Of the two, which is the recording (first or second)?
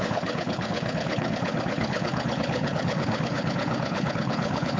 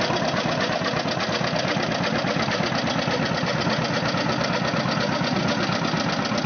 second